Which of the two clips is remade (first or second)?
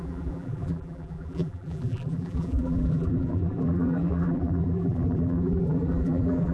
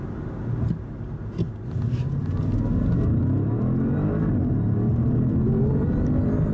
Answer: first